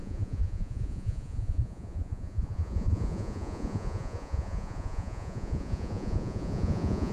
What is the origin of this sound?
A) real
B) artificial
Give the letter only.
B